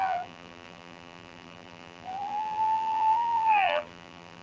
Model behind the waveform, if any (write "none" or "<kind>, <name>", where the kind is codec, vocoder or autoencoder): vocoder, BigVGAN v2